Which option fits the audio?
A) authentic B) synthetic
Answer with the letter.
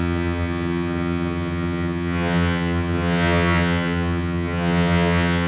B